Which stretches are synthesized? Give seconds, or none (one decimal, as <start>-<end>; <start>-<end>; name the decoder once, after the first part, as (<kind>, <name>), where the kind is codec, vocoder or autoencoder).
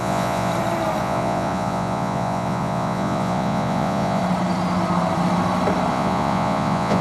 0.0-0.5 (vocoder, Vocos); 1.0-4.2; 5.9-7.0